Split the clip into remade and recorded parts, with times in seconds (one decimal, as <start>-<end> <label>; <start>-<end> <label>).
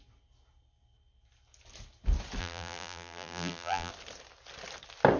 0.0-2.4 recorded; 2.4-3.9 remade; 3.9-5.2 recorded